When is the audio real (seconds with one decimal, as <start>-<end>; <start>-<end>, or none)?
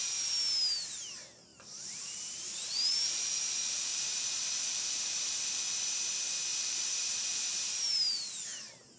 0.0-1.5; 5.4-6.5; 8.3-9.0